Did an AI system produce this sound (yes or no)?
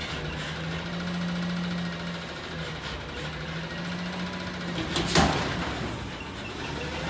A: no